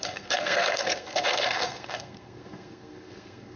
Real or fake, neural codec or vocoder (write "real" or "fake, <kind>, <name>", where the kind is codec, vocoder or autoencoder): fake, codec, SNAC